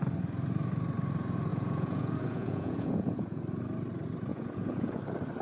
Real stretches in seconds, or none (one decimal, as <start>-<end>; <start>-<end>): 0.0-1.5; 3.4-4.3; 5.0-5.4